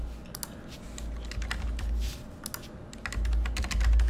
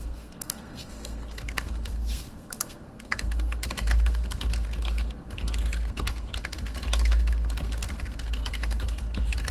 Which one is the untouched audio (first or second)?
first